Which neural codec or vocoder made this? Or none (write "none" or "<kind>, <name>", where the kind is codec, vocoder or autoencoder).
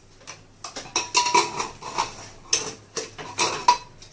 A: none